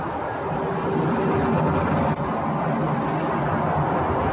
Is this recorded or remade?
recorded